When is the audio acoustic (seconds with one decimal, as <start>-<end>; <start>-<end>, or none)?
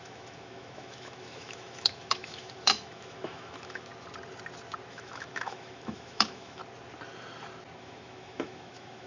3.9-4.9; 6.6-7.8